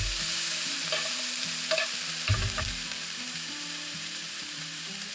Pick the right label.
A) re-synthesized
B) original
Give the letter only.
A